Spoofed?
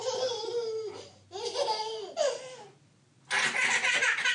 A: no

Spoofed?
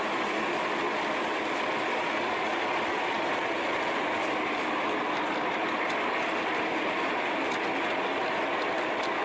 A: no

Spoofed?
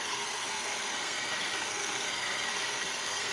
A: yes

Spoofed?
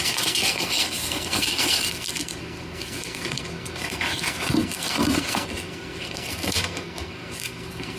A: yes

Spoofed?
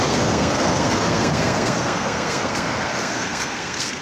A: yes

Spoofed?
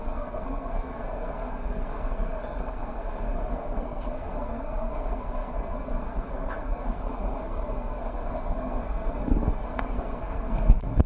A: yes